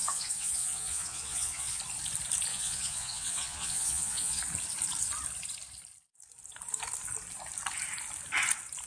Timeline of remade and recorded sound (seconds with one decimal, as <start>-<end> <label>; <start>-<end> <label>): 0.0-1.8 remade; 1.8-2.5 recorded; 2.5-4.4 remade; 4.4-8.9 recorded